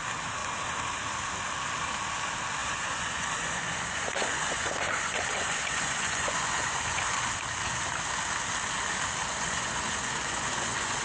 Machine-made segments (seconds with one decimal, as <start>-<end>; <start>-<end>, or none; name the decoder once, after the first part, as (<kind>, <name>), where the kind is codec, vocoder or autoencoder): 2.6-7.3 (vocoder, Vocos); 9.2-11.0